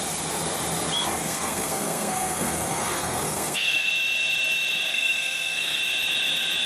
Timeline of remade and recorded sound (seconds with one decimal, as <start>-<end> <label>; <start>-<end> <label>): 0.0-1.2 recorded; 1.2-3.9 remade; 3.9-4.9 recorded; 4.9-5.8 remade; 5.8-6.7 recorded